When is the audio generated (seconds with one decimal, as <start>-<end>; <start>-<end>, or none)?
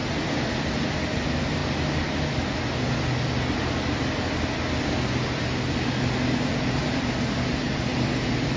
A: none